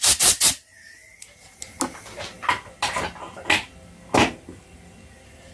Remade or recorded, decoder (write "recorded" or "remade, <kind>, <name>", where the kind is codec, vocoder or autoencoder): recorded